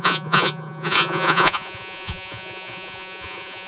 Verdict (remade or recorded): remade